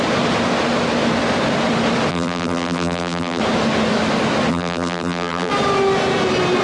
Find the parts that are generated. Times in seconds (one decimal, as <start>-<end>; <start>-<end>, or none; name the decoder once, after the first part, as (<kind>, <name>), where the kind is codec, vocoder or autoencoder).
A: 2.1-3.4 (vocoder, BigVGAN v2); 4.5-5.5